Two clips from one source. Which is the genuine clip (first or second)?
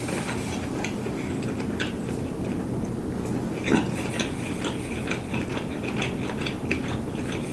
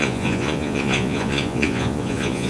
first